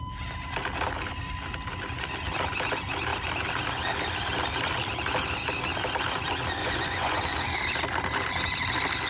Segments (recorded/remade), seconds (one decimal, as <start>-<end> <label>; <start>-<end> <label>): 0.0-6.6 recorded; 6.6-7.2 remade; 7.2-9.1 recorded